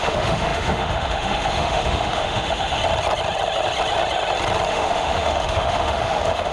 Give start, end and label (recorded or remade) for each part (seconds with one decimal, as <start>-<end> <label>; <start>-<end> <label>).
0.0-2.8 remade; 2.8-4.7 recorded; 4.7-6.5 remade